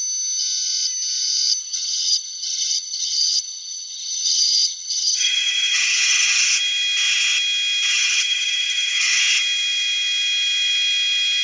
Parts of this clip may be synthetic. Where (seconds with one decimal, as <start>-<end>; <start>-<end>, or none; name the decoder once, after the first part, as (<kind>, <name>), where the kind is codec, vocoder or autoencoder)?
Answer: 1.6-6.6 (vocoder, HiFi-GAN); 7.9-9.2